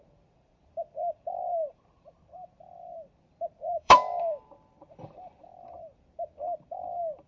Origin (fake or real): fake